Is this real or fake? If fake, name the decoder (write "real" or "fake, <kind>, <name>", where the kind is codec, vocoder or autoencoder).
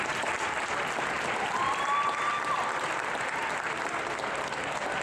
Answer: real